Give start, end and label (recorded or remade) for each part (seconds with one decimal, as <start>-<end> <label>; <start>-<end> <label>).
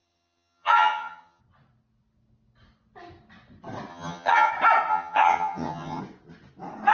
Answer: 0.0-1.4 remade; 1.4-3.9 recorded; 3.9-4.5 remade; 4.5-4.9 recorded; 4.9-6.0 remade; 6.0-6.9 recorded